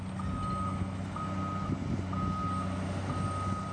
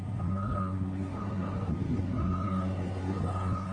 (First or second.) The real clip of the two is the first